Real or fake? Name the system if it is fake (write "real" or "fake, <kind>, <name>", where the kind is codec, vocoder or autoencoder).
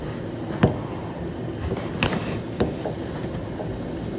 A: real